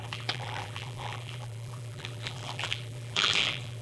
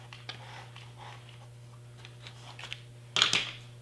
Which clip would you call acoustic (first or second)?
second